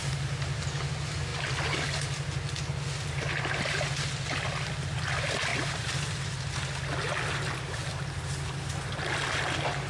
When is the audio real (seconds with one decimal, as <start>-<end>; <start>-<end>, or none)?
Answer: 0.0-5.5; 6.3-9.9